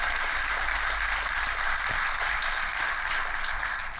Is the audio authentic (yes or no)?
yes